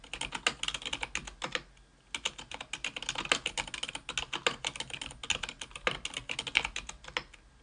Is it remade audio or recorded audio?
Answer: recorded